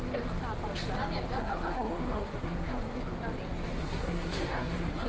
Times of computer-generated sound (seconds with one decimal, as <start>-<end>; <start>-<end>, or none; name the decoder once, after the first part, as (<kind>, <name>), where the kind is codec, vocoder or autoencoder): 1.4-3.0 (codec, SNAC); 3.8-5.1

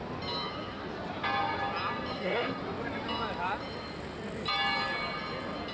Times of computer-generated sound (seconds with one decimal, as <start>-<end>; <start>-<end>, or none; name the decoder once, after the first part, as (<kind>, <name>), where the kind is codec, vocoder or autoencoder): 2.1-2.6 (codec, SNAC)

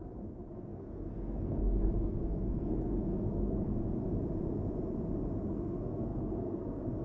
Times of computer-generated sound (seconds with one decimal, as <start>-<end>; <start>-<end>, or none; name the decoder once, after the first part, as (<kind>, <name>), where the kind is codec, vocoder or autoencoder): 0.0-3.7 (codec, SNAC); 5.5-7.0

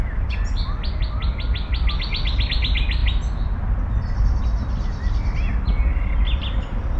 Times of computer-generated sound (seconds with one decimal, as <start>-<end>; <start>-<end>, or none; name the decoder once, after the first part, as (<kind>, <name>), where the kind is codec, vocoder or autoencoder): none

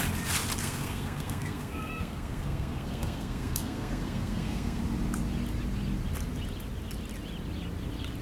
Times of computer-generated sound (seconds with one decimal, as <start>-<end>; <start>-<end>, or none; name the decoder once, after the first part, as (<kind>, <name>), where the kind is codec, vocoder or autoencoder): 0.6-4.8 (codec, SNAC)